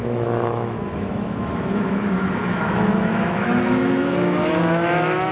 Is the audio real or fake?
fake